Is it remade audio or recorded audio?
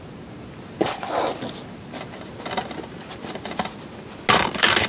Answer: recorded